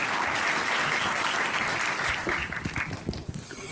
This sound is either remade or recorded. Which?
recorded